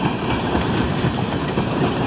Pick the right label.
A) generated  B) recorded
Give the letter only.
A